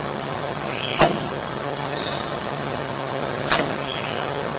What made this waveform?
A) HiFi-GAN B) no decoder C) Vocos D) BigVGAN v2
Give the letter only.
A